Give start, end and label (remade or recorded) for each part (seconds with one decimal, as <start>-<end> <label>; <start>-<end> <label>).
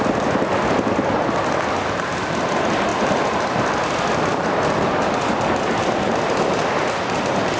0.0-7.6 recorded